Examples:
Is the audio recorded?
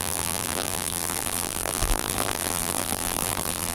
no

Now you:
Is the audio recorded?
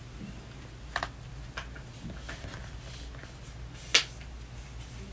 yes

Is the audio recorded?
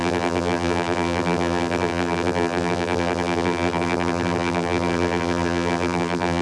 no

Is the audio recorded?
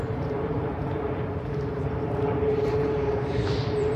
no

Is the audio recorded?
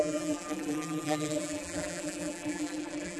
no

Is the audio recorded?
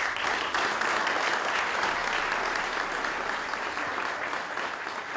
yes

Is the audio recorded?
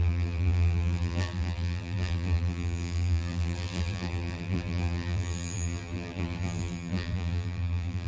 no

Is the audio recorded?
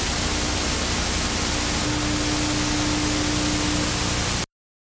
yes